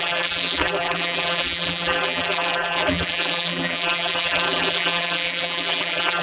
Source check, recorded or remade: remade